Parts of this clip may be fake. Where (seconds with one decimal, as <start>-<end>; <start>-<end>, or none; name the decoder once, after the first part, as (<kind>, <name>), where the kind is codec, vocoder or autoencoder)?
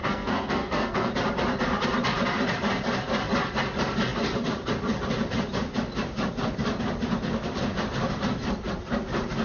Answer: 0.0-1.1 (codec, SNAC)